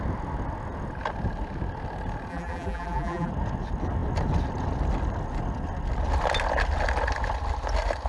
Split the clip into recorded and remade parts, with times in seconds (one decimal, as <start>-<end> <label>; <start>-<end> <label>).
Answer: 0.0-2.3 recorded; 2.3-3.3 remade; 3.3-8.1 recorded